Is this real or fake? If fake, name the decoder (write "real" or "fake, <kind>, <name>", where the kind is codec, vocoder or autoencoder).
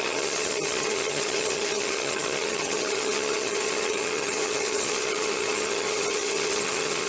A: fake, vocoder, HiFi-GAN